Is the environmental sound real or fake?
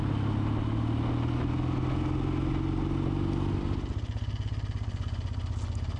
real